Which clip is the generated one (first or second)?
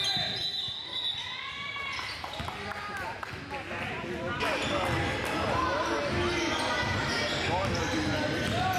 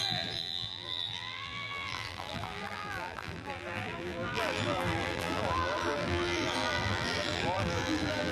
second